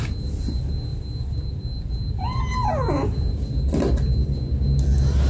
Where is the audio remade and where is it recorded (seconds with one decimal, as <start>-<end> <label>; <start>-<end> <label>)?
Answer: 0.0-5.3 recorded